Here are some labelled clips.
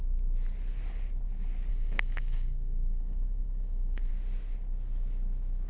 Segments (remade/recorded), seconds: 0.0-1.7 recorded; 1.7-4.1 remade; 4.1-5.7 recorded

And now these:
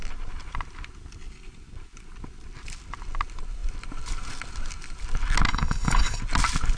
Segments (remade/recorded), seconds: 0.0-5.5 recorded; 5.5-6.2 remade; 6.2-6.8 recorded

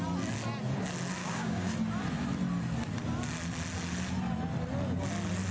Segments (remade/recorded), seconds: 0.0-1.2 recorded; 1.2-1.7 remade; 1.7-5.5 recorded

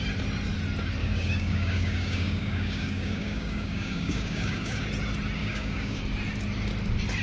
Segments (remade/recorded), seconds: 0.0-1.0 recorded; 1.0-4.8 remade; 4.8-5.4 recorded; 5.4-6.0 remade; 6.0-7.2 recorded